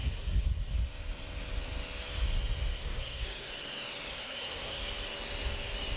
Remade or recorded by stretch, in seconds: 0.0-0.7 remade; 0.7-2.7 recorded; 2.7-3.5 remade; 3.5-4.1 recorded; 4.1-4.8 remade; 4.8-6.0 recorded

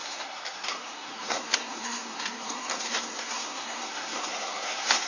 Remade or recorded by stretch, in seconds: 0.0-5.1 remade

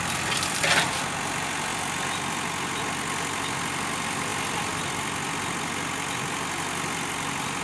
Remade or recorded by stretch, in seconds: 0.0-7.6 recorded

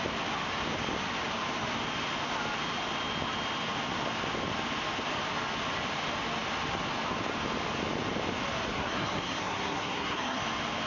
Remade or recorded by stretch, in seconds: 0.0-8.7 recorded; 8.7-10.4 remade; 10.4-10.9 recorded

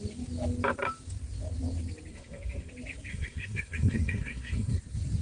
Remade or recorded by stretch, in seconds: 0.0-2.1 recorded; 2.1-2.7 remade; 2.7-3.1 recorded; 3.1-4.8 remade; 4.8-5.2 recorded

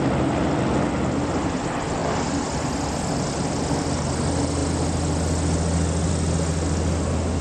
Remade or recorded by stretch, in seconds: 0.0-7.4 recorded

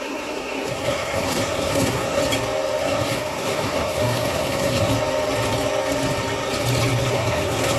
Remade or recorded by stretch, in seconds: 0.0-2.2 remade; 2.2-2.8 recorded; 2.8-4.9 remade; 4.9-7.1 recorded; 7.1-7.8 remade

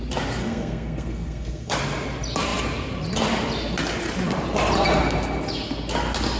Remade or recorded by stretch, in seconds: 0.0-0.4 recorded; 0.4-1.8 remade; 1.8-6.4 recorded